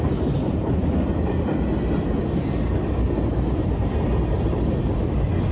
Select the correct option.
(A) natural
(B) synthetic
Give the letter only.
A